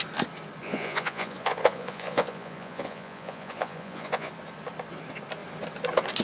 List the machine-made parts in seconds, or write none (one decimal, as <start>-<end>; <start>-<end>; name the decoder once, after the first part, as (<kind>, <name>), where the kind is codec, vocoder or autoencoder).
0.6-4.3 (vocoder, Vocos)